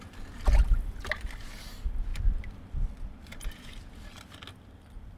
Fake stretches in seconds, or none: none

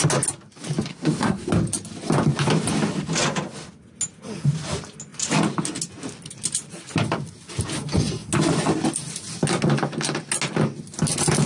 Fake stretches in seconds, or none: 0.9-1.5 (codec, SNAC)

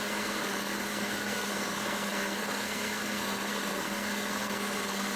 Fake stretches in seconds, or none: 0.0-5.2 (codec, SNAC)

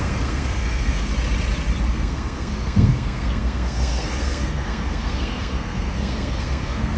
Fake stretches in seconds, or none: 0.0-1.1 (codec, SNAC); 1.9-7.0

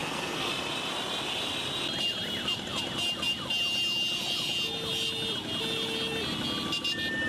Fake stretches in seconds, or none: 0.0-0.5 (codec, SNAC)

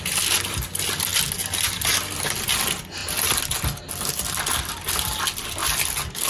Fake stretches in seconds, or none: none